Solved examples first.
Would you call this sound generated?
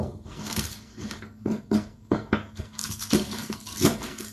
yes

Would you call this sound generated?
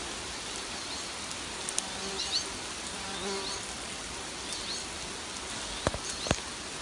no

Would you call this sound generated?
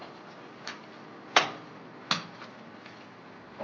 no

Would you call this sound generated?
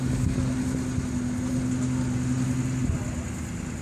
no